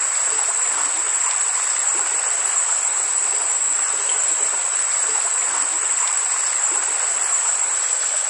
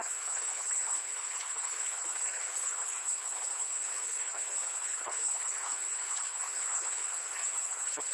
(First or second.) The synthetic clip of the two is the second